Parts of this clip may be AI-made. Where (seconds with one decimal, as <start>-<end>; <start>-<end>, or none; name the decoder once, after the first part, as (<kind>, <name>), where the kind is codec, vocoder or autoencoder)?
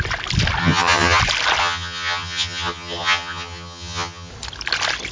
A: 0.6-1.2 (vocoder, HiFi-GAN); 1.6-4.3